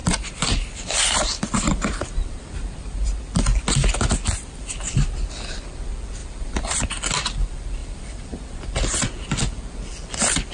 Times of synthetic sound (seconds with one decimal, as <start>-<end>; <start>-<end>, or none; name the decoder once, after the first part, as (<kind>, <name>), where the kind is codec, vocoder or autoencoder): 0.0-3.2 (vocoder, BigVGAN v2); 6.2-6.9; 7.8-8.4